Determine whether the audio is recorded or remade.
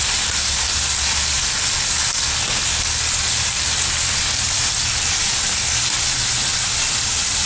recorded